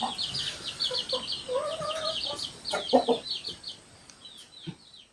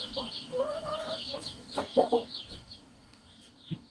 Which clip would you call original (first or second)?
first